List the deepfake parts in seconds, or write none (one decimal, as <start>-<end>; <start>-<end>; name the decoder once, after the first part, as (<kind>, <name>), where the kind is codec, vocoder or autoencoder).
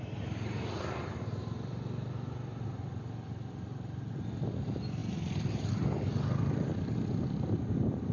none